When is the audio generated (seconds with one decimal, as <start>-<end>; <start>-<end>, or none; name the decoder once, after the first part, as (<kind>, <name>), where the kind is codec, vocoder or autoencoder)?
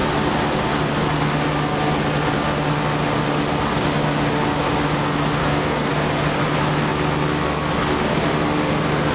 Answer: 5.4-5.9 (codec, SNAC)